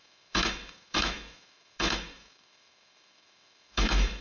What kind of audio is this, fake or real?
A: fake